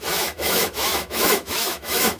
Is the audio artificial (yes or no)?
yes